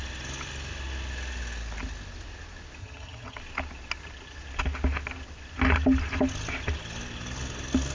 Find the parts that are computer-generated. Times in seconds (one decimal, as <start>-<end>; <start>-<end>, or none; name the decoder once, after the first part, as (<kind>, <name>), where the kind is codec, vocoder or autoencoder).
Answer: 2.8-3.4 (vocoder, HiFi-GAN)